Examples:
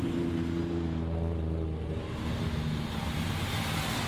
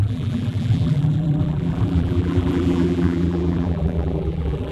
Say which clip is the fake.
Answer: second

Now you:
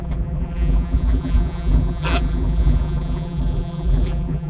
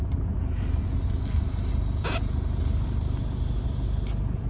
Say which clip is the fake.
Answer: first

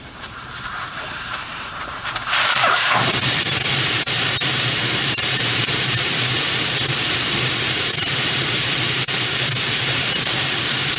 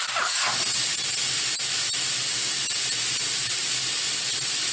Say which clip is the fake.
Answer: first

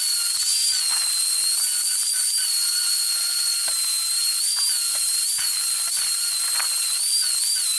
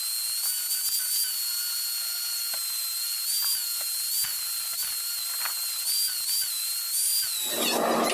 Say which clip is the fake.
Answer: first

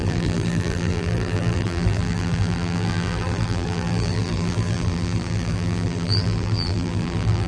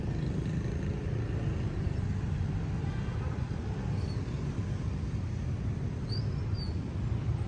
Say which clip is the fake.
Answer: first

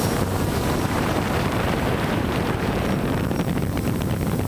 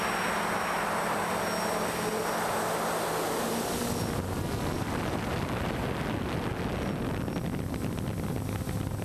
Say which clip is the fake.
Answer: first